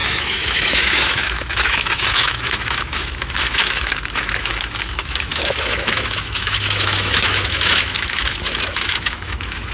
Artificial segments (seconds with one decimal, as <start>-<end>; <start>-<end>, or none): 0.0-9.7